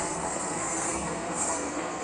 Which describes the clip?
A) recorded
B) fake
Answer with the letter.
B